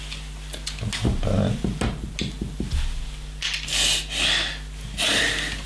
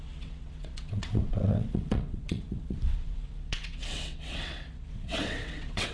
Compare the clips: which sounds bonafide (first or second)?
first